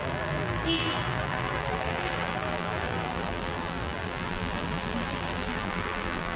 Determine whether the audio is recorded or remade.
remade